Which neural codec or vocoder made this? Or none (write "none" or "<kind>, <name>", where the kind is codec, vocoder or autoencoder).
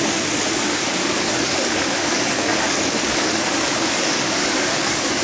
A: codec, DAC